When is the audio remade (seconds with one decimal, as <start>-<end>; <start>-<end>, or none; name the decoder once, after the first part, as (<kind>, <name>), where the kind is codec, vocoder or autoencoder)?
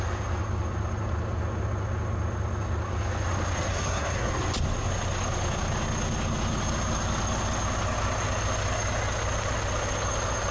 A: 3.7-4.3 (codec, SNAC)